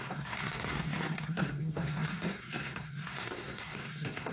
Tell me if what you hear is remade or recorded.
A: remade